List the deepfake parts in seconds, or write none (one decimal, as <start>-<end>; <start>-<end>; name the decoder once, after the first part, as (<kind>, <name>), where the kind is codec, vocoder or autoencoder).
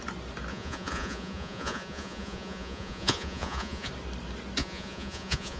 0.5-3.9 (vocoder, Vocos); 4.6-5.6